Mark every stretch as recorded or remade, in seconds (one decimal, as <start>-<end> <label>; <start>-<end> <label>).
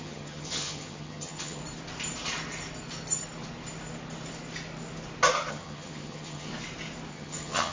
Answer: 0.0-1.6 remade; 1.6-5.5 recorded; 5.5-6.5 remade; 6.5-7.1 recorded; 7.1-7.7 remade